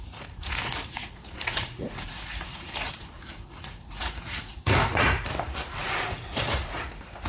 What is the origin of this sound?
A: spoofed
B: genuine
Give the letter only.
A